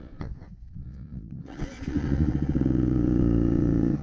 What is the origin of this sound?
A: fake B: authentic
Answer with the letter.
A